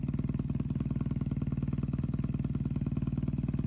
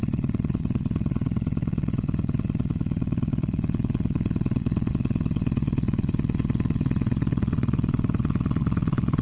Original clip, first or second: first